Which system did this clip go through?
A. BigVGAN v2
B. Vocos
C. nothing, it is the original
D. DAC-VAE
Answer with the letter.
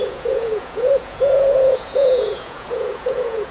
B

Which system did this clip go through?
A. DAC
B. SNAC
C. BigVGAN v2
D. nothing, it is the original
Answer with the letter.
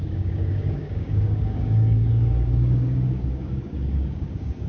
A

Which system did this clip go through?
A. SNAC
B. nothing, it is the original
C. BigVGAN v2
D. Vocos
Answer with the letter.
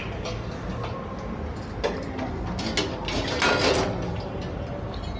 B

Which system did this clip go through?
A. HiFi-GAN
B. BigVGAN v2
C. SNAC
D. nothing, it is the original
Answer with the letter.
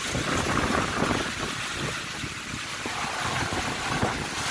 D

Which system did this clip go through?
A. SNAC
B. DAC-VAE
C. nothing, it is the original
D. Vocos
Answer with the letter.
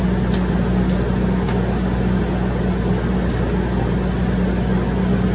C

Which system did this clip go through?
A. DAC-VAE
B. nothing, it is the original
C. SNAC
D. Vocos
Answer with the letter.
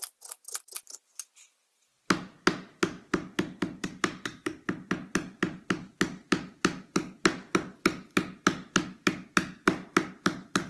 B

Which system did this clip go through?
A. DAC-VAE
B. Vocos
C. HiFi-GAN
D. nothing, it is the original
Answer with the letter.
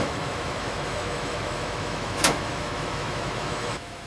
A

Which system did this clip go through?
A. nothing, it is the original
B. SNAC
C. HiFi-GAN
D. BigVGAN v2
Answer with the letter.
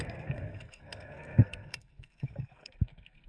B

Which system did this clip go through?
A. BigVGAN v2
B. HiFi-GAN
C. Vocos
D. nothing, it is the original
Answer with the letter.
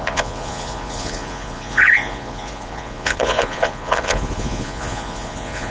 C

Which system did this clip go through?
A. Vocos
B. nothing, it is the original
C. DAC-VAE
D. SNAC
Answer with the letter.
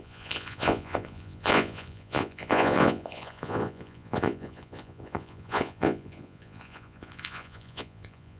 A